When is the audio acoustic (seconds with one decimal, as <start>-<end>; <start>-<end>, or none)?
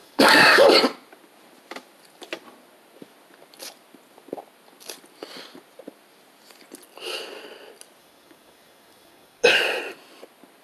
0.7-8.0; 9.6-10.6